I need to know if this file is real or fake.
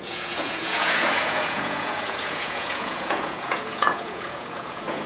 fake